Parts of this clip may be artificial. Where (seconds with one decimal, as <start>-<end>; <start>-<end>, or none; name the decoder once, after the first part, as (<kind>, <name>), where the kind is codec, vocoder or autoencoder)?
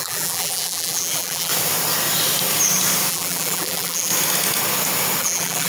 0.0-1.5 (vocoder, BigVGAN v2); 3.1-4.1; 5.2-5.7